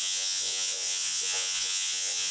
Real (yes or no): no